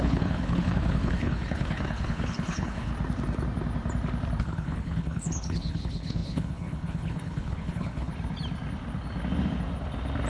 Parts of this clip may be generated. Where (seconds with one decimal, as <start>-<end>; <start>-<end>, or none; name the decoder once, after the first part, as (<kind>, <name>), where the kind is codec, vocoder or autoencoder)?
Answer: 0.0-2.9 (codec, HILCodec); 4.4-8.1